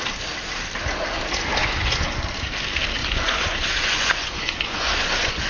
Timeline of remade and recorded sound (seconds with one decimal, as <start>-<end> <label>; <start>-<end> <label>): 0.0-1.6 recorded; 1.6-2.2 remade; 2.2-3.0 recorded; 3.0-5.5 remade

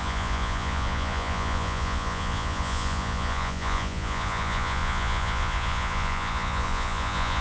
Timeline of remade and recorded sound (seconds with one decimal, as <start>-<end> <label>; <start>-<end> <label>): 0.0-7.4 remade